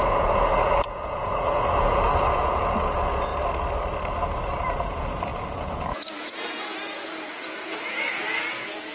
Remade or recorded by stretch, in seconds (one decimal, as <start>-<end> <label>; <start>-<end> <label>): 0.0-3.3 remade; 3.3-4.1 recorded; 4.1-8.9 remade